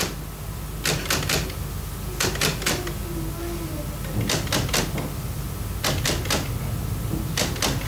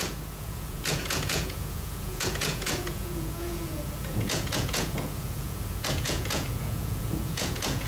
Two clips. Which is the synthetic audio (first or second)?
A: second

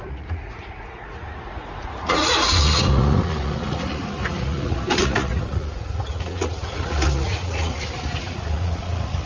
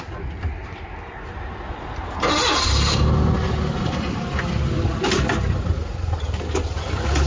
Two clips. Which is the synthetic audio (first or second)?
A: first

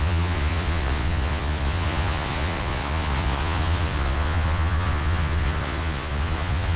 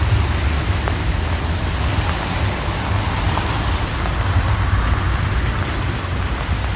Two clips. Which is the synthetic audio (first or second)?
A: first